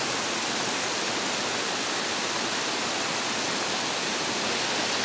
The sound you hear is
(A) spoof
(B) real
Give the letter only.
B